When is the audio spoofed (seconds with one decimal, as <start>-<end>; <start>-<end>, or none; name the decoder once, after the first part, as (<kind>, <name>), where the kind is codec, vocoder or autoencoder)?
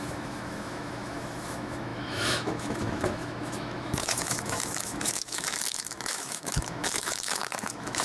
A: 0.0-8.0 (autoencoder, DAC-VAE)